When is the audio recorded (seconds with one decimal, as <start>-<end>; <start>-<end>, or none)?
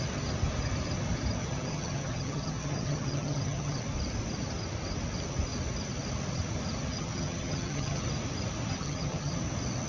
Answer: 0.0-1.4; 3.8-6.9; 8.0-8.7; 9.3-9.9